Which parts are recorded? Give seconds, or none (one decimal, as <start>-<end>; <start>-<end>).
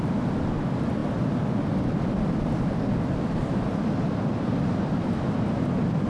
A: 0.0-6.1